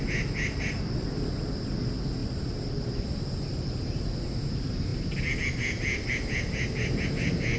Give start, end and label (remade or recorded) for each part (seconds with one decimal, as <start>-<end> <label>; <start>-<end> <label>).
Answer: 0.0-7.6 recorded